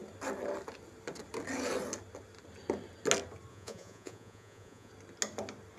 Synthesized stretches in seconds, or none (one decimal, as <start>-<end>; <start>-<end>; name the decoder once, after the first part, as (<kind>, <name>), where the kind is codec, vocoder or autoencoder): 3.5-4.9 (vocoder, Vocos)